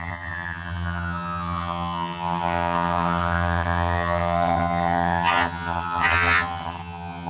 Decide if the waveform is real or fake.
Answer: fake